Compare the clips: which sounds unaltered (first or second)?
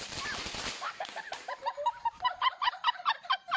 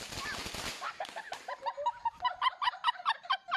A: second